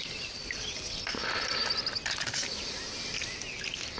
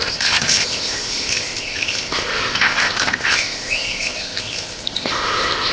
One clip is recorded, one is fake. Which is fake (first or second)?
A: second